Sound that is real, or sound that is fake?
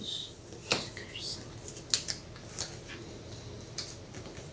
real